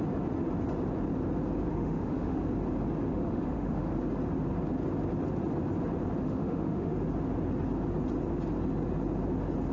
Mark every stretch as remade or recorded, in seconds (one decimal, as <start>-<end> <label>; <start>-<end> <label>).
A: 0.0-1.7 recorded; 1.7-2.4 remade; 2.4-3.1 recorded; 3.1-3.9 remade; 3.9-6.2 recorded; 6.2-6.9 remade; 6.9-9.7 recorded